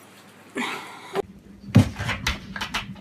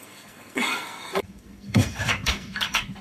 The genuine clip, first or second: first